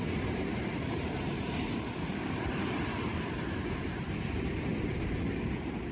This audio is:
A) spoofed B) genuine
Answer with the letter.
A